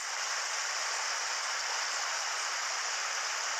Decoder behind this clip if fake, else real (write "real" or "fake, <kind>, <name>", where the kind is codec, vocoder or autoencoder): real